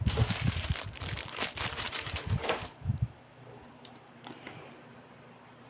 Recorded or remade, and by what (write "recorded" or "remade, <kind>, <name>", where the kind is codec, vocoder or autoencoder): remade, vocoder, BigVGAN v2